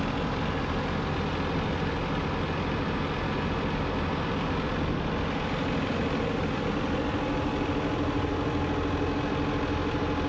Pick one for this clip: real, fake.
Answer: real